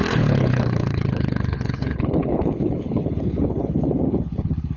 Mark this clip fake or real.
fake